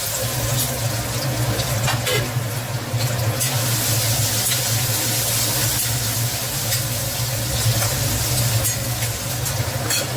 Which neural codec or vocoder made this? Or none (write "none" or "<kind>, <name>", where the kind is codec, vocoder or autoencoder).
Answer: none